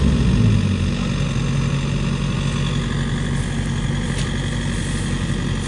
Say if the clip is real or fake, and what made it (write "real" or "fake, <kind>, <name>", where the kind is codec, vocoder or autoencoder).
real